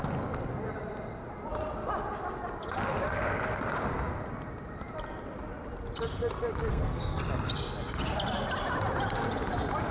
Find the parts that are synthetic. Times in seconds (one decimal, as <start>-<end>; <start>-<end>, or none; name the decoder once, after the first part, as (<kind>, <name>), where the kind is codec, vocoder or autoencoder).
6.7-7.2 (codec, SNAC)